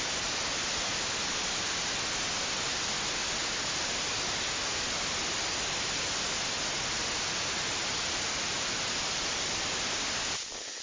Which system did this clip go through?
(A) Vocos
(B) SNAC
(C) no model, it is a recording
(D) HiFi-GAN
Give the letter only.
C